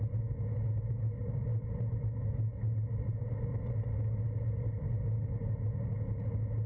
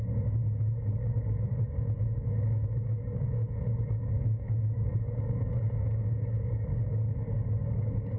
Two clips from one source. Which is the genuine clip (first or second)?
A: first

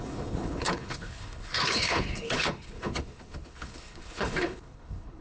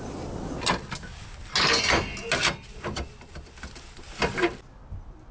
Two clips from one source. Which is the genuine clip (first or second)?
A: second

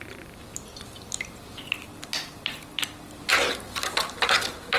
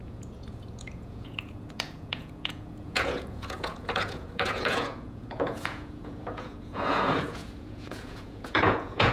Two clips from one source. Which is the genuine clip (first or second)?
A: first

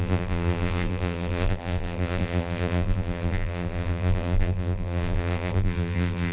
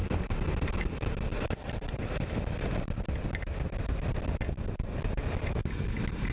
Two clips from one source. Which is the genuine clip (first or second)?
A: second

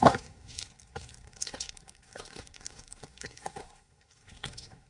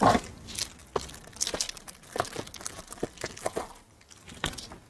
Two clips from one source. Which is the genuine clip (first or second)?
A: second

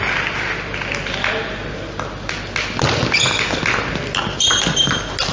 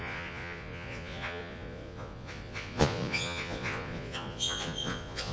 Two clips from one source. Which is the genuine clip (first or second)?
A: first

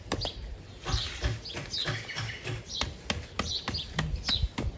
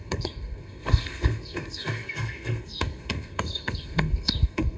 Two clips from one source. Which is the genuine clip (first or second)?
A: first